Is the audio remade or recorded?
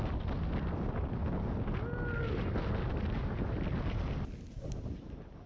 recorded